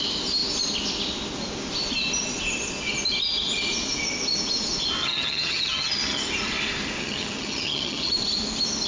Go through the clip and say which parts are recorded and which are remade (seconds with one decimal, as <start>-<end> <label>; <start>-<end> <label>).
0.0-5.0 recorded; 5.0-6.2 remade; 6.2-7.0 recorded; 7.0-8.1 remade; 8.1-8.9 recorded